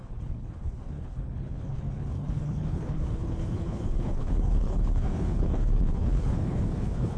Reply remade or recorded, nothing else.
remade